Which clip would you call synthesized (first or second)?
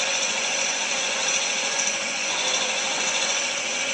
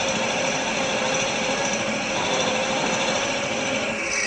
first